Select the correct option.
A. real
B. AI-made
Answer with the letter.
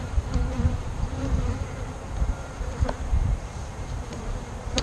B